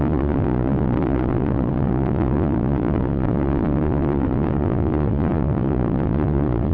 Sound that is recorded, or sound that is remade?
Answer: remade